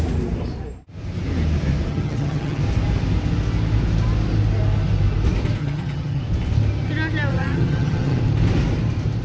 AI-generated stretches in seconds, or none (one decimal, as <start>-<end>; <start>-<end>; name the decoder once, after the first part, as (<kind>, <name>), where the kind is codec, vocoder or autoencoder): 1.9-2.6 (vocoder, HiFi-GAN); 5.6-6.2; 7.3-8.2